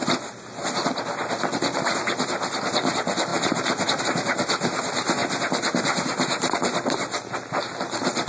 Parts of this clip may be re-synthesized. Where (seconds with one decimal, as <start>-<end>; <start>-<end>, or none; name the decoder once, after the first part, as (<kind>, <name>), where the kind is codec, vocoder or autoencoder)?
none